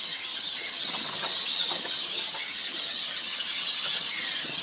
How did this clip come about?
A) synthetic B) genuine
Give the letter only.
A